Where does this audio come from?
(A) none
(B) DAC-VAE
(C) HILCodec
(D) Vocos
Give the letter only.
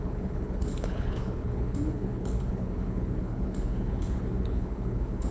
C